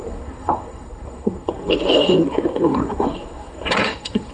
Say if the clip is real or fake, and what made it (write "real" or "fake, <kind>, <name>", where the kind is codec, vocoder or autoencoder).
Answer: fake, codec, SNAC